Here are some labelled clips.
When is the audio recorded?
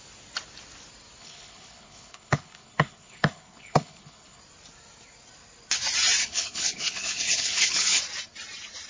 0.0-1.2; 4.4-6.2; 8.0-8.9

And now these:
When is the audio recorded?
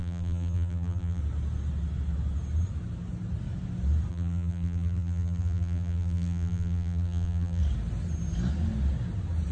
1.2-4.1; 7.6-9.5